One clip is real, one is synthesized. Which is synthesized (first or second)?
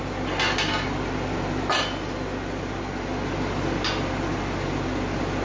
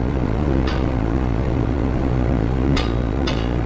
second